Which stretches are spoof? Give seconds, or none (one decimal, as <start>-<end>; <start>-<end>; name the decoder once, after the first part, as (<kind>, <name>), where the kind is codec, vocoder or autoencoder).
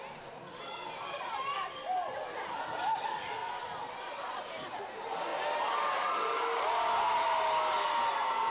none